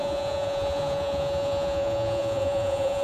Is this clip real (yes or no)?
no